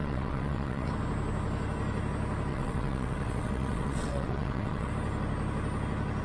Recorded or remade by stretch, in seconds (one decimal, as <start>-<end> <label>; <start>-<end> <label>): 0.0-0.9 remade; 0.9-2.5 recorded; 2.5-4.9 remade; 4.9-6.2 recorded